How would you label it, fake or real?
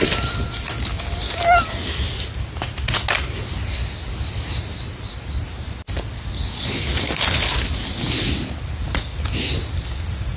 real